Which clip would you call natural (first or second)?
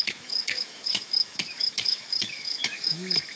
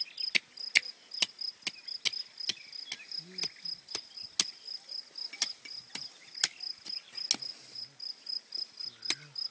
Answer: second